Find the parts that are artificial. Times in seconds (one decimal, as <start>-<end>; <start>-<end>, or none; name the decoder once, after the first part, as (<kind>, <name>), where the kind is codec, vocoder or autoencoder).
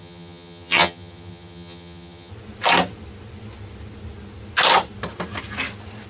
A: 0.0-2.3 (vocoder, HiFi-GAN)